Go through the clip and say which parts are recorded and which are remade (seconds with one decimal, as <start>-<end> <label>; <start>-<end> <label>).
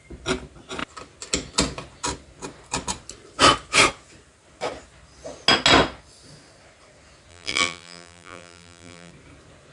0.0-7.3 recorded; 7.3-9.1 remade; 9.1-9.7 recorded